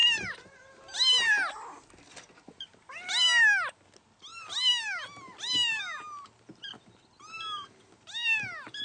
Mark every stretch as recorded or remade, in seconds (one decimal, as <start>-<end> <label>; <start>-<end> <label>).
0.0-0.6 remade; 0.6-8.8 recorded